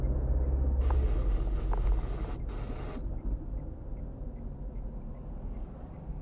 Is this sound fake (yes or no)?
no